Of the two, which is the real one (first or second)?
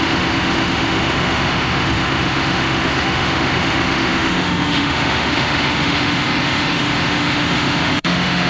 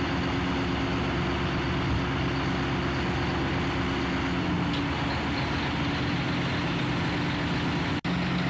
second